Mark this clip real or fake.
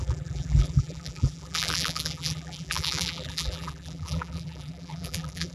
fake